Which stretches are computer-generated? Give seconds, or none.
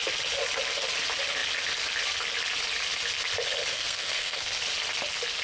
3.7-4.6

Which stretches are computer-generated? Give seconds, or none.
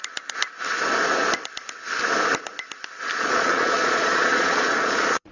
3.2-5.3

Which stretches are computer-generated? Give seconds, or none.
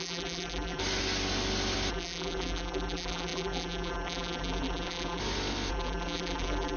0.0-0.8; 1.9-5.2; 5.7-6.8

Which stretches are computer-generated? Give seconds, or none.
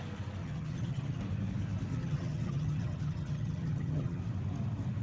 0.4-1.2; 1.9-4.2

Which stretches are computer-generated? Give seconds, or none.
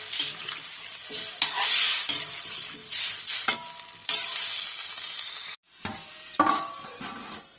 1.0-2.0; 2.8-3.5; 4.0-4.9